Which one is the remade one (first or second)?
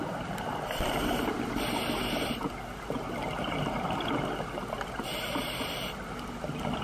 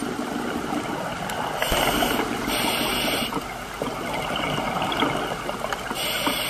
first